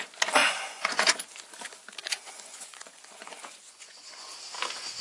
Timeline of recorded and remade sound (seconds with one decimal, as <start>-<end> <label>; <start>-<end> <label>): 0.0-0.4 recorded; 0.4-1.1 remade; 1.1-2.0 recorded; 2.0-4.3 remade; 4.3-5.0 recorded

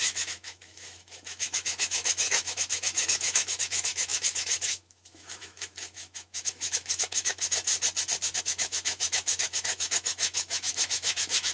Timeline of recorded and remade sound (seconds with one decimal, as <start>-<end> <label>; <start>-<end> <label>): 0.0-7.7 remade; 7.7-8.4 recorded; 8.4-11.5 remade